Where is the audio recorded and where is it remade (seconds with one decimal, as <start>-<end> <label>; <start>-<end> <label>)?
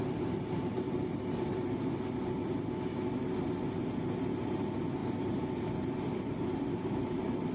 0.0-1.2 remade; 1.2-5.0 recorded; 5.0-7.5 remade